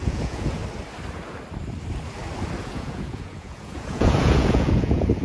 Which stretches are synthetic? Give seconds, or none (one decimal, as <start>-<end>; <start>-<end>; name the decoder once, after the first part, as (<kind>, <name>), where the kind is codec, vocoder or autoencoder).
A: 0.0-0.6 (vocoder, Vocos); 2.6-5.2